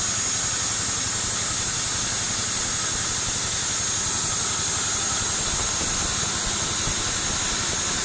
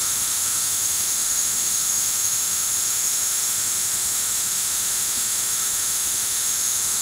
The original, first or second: first